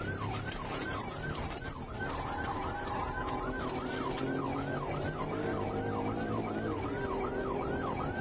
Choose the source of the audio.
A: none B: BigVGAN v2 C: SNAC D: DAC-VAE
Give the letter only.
B